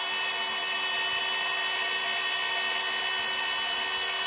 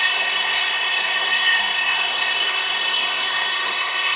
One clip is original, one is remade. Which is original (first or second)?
first